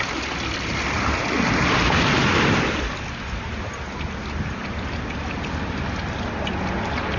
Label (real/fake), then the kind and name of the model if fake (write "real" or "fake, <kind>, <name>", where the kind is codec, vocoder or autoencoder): real